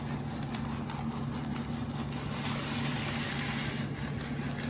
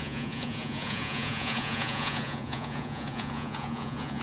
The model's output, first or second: second